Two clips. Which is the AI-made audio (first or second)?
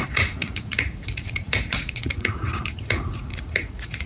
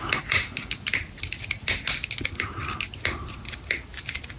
first